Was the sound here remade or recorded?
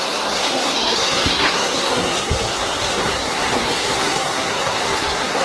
remade